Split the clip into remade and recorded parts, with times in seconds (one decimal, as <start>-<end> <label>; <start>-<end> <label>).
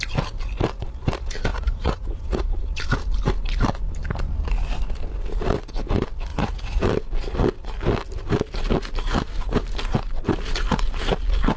0.0-1.5 recorded; 1.5-2.5 remade; 2.5-6.3 recorded; 6.3-6.8 remade; 6.8-11.6 recorded